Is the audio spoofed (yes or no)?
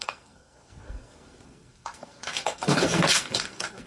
yes